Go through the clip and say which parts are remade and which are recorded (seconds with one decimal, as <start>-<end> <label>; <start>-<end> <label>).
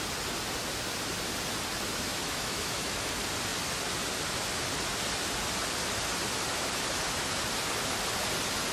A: 0.0-2.1 recorded; 2.1-3.1 remade; 3.1-8.7 recorded